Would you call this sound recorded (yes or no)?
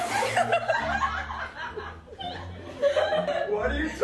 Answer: yes